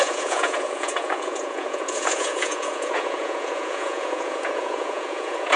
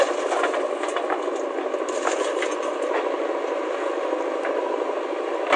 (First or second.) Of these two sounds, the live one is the second